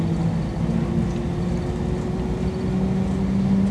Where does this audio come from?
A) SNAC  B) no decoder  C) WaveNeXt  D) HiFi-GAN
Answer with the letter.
B